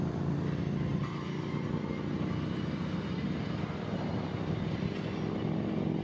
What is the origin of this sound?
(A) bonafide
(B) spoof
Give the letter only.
A